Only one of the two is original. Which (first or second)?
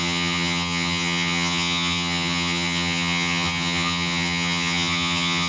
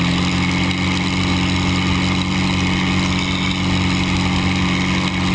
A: second